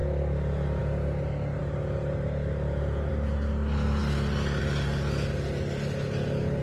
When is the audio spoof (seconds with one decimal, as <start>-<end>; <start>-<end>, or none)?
none